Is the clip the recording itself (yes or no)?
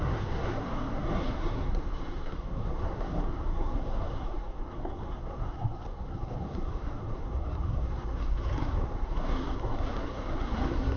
no